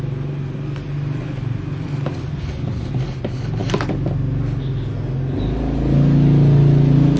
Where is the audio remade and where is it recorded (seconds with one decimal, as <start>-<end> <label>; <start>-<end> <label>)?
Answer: 0.0-7.2 recorded